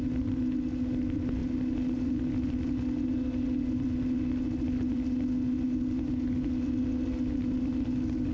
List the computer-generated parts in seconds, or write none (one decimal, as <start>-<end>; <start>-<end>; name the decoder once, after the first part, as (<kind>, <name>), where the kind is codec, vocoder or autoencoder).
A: none